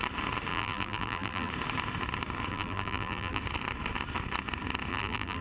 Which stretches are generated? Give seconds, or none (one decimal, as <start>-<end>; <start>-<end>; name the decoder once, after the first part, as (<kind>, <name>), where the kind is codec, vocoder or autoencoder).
0.5-1.5 (vocoder, BigVGAN v2); 2.5-3.4; 4.9-5.4